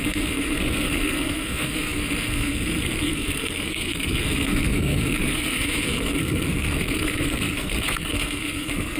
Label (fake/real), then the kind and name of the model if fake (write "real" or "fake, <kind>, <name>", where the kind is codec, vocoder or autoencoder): fake, codec, SNAC